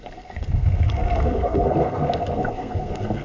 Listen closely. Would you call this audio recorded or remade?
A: remade